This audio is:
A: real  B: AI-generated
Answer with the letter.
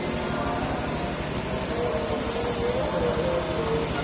A